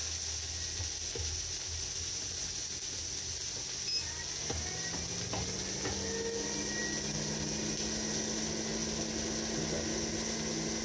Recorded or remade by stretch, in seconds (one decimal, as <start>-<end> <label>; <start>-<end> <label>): 0.0-10.8 recorded